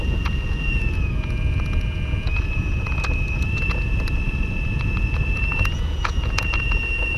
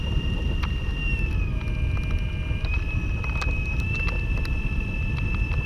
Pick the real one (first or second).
second